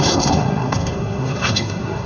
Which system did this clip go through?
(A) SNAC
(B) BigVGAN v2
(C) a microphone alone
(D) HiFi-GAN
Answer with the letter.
A